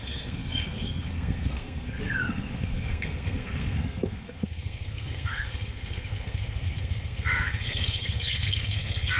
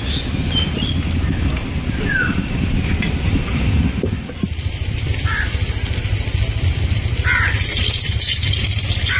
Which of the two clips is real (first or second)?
second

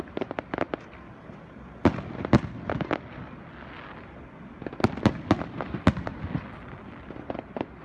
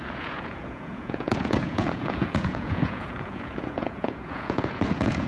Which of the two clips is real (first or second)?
first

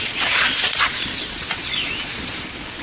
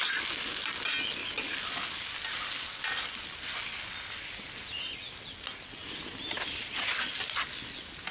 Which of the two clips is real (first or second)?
second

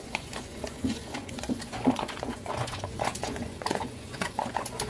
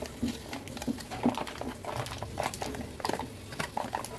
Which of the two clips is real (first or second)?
second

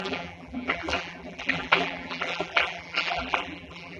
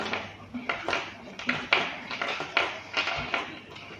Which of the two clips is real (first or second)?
second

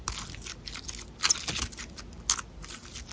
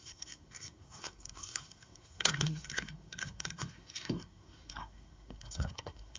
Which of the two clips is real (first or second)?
first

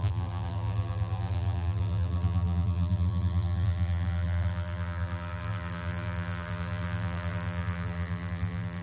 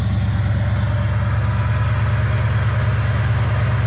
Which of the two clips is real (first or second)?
second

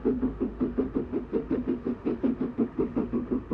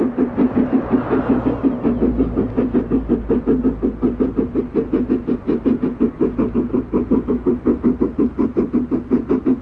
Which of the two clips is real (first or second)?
second